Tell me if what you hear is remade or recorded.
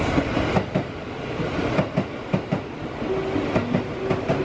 recorded